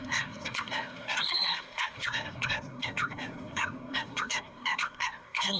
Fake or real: fake